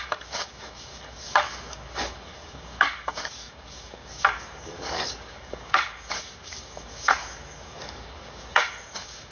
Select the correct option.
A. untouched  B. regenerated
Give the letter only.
B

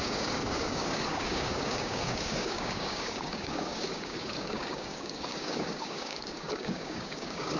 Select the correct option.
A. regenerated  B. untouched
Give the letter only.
A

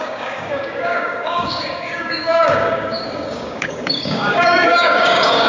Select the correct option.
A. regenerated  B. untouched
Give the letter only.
A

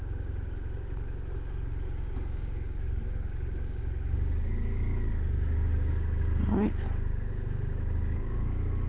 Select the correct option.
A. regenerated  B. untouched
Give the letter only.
A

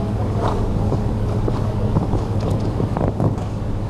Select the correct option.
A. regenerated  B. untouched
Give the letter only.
A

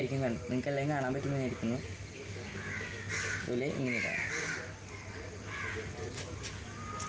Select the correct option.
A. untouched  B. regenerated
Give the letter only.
A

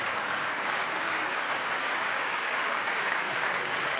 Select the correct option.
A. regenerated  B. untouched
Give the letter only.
A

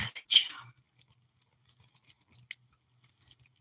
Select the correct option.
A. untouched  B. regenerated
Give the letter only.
A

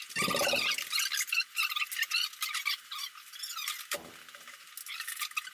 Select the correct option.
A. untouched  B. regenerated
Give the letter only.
A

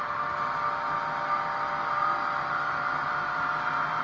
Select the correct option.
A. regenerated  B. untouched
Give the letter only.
B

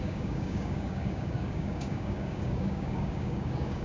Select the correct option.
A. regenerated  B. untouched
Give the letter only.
A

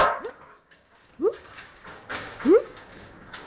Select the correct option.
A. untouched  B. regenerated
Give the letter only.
B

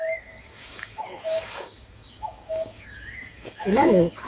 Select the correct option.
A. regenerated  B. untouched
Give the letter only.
A